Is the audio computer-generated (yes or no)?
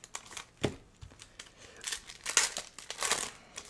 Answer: no